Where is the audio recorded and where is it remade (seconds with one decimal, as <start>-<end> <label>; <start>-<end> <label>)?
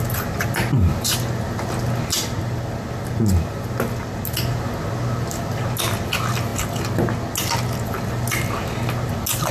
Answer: 0.0-9.5 recorded